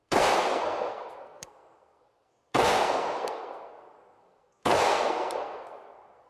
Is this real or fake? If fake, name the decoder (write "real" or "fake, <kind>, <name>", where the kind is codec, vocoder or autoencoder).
fake, codec, SNAC